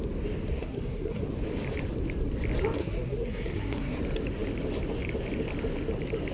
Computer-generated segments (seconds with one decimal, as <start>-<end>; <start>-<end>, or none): 0.5-1.2; 2.8-4.0